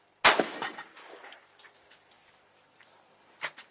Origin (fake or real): real